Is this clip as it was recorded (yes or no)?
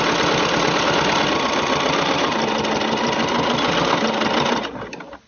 yes